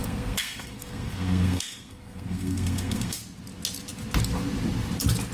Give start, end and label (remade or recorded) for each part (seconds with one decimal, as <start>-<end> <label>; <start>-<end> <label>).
0.0-3.2 remade; 3.2-5.3 recorded